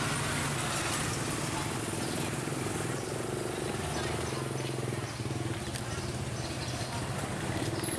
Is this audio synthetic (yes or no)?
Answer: no